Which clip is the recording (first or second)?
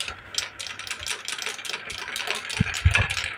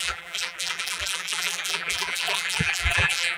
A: first